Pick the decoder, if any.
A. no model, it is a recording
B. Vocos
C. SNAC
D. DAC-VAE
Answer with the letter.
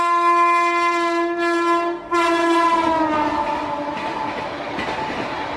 A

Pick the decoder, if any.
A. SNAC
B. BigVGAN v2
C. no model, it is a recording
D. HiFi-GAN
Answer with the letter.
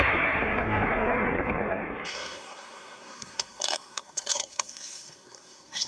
A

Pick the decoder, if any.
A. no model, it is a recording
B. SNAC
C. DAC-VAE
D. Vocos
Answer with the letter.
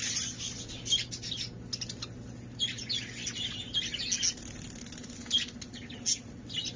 A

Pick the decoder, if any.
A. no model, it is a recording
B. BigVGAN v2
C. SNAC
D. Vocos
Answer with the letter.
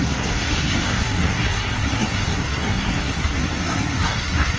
C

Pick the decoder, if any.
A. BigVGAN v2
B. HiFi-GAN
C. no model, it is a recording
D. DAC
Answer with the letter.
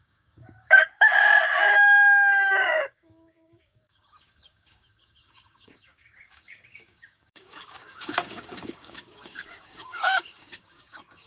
D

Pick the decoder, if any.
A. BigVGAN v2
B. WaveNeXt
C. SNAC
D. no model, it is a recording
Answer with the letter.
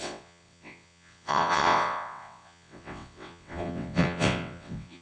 B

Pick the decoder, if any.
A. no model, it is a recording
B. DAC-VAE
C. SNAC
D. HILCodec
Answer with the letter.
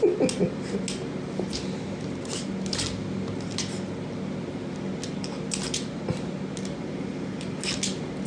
A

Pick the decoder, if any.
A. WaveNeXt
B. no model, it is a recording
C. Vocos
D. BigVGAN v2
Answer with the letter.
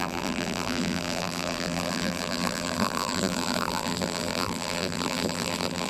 D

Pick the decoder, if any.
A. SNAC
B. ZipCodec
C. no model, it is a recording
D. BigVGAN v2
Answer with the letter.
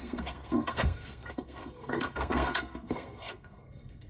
A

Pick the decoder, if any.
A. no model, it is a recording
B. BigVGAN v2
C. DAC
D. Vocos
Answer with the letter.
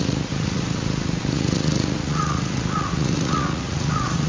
D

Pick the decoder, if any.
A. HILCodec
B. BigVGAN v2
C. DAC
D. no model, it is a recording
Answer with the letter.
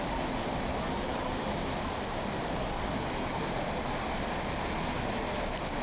D